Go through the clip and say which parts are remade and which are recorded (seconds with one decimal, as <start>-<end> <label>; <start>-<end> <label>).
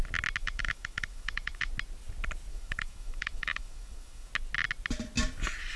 0.0-0.4 recorded; 0.4-1.7 remade; 1.7-2.5 recorded; 2.5-4.3 remade; 4.3-5.8 recorded